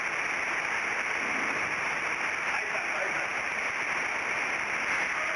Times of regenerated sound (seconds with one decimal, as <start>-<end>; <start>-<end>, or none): none